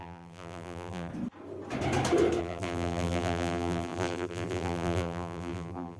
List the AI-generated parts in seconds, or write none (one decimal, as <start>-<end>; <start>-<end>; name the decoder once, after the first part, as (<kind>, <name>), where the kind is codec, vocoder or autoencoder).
0.0-1.1 (vocoder, BigVGAN v2); 2.4-6.0